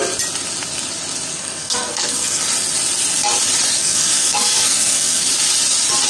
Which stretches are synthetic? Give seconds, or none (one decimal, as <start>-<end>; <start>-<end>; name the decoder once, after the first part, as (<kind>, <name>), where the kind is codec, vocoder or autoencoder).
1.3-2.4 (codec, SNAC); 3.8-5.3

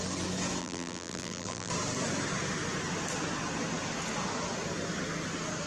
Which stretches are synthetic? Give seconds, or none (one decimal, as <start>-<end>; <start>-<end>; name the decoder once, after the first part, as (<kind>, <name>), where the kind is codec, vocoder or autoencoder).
0.6-1.7 (vocoder, BigVGAN v2)

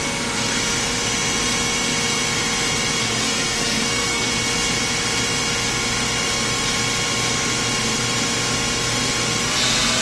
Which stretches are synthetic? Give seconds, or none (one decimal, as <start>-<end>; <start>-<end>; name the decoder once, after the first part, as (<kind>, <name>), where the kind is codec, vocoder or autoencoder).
3.0-4.3 (codec, SNAC)